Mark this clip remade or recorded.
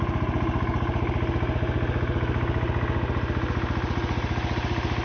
recorded